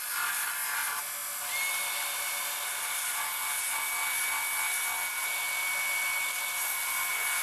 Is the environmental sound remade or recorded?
recorded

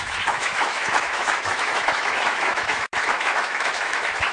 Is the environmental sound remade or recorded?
remade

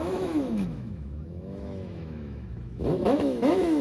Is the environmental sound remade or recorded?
remade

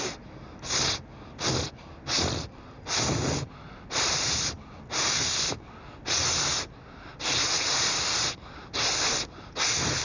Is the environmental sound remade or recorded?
recorded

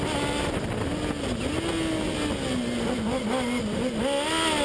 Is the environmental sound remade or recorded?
recorded